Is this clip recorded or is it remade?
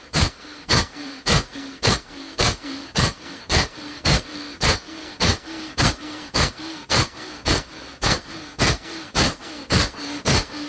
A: remade